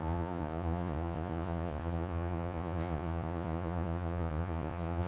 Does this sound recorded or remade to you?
remade